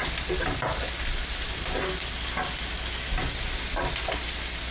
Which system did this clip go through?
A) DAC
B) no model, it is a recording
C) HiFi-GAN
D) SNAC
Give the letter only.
B